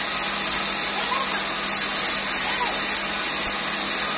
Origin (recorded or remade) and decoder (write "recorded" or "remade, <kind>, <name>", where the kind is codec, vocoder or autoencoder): recorded